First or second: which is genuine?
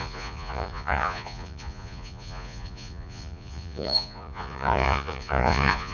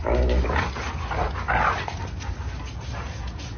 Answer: second